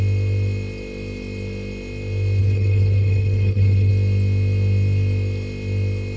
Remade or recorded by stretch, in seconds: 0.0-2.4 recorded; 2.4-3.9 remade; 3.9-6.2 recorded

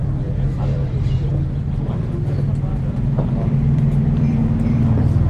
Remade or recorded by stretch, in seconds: 0.0-1.3 remade; 1.3-2.7 recorded; 2.7-4.4 remade; 4.4-5.3 recorded

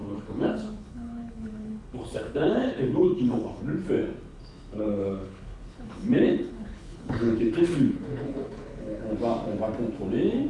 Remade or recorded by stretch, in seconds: 0.0-3.6 remade; 3.6-4.3 recorded; 4.3-9.1 remade; 9.1-10.5 recorded

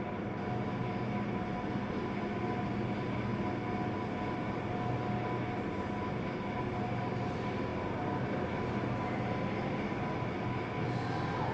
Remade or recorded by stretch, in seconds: 0.0-11.5 recorded

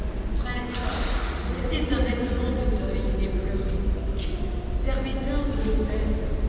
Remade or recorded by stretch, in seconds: 0.0-0.8 recorded; 0.8-2.6 remade; 2.6-6.5 recorded

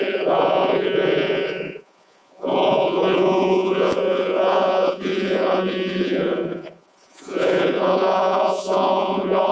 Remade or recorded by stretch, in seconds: 0.0-9.5 remade

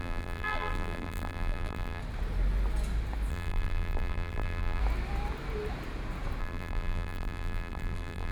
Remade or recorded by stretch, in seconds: 0.0-2.0 remade; 2.0-3.3 recorded; 3.3-4.8 remade; 4.8-6.4 recorded; 6.4-8.3 remade